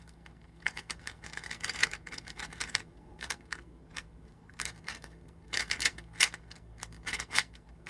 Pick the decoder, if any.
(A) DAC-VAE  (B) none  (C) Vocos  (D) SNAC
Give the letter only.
D